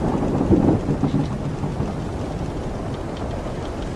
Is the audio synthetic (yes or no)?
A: no